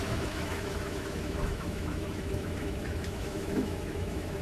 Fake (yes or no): yes